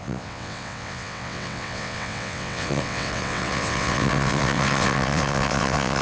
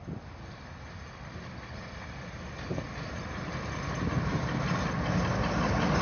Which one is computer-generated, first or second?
first